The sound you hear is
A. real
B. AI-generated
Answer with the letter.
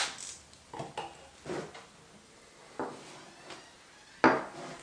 A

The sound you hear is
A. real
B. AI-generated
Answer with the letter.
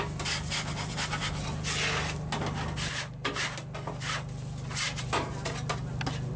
A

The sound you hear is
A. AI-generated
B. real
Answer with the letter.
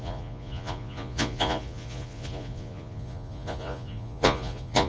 A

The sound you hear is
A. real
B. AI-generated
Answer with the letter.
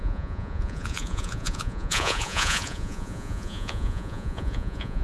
B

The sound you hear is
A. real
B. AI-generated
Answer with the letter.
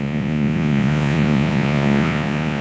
B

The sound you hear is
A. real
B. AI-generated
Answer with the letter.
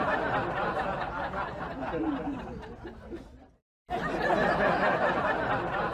A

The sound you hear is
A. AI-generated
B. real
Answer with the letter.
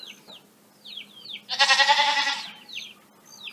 B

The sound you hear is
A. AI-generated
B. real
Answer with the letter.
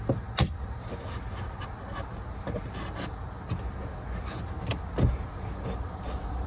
B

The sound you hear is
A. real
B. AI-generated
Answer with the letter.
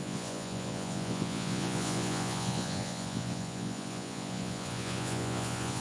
B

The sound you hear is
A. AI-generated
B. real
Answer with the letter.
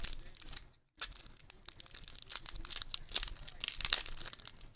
B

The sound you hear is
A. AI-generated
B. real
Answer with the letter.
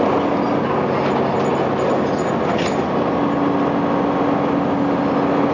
B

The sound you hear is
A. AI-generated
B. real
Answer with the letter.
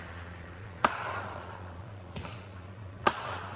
A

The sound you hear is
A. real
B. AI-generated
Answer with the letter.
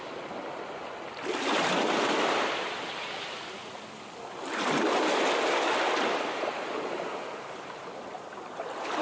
A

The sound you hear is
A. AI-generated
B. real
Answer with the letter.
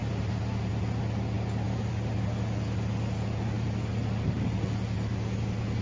B